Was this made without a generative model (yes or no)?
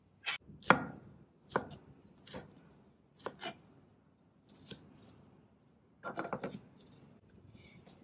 yes